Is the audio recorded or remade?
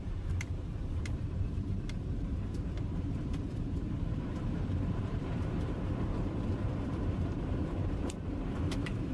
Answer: remade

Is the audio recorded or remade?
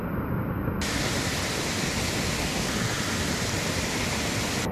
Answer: recorded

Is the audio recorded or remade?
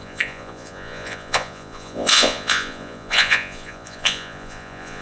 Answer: remade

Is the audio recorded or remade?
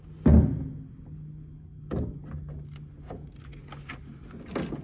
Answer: recorded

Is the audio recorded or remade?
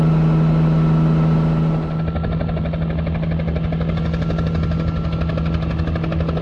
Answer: recorded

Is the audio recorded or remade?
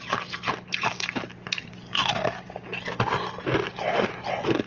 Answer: recorded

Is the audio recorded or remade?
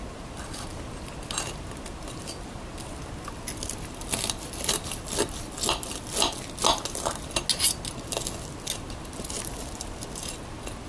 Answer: recorded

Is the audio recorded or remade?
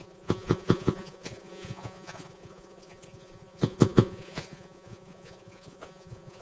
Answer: remade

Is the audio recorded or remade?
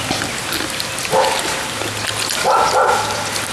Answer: recorded